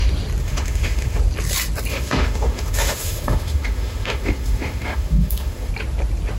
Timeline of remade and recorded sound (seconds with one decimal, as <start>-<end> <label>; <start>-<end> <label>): 0.0-0.4 recorded; 0.4-1.2 remade; 1.2-1.9 recorded; 1.9-5.7 remade; 5.7-6.4 recorded